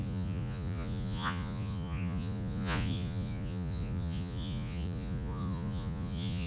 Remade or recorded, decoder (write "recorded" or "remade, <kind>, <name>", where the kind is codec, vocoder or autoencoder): remade, vocoder, Vocos